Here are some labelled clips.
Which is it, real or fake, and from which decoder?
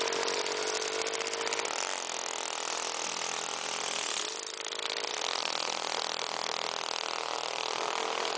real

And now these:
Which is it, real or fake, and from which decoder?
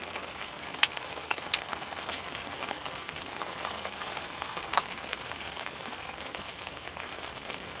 fake, codec, SNAC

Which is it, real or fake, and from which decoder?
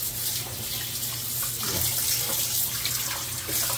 real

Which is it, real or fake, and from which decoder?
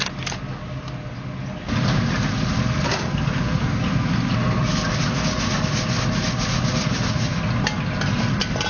real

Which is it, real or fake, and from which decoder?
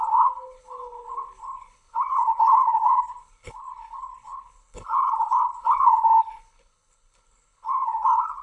fake, codec, HILCodec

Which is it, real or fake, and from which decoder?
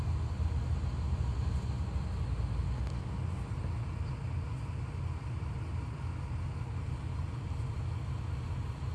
real